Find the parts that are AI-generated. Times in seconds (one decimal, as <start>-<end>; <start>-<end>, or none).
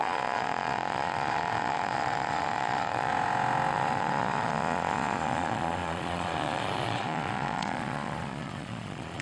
0.0-3.1; 3.7-9.2